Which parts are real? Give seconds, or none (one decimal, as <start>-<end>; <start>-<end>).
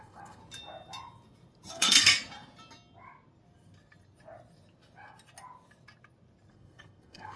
0.4-1.7; 2.1-6.5